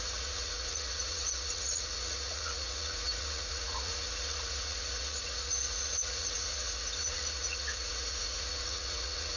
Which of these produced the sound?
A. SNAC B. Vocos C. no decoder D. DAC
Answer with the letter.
B